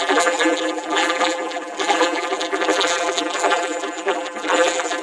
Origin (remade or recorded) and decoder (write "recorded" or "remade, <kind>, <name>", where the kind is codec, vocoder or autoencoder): remade, vocoder, BigVGAN v2